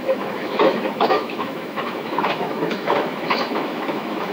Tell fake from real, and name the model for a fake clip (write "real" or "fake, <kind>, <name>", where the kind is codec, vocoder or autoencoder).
fake, autoencoder, DAC-VAE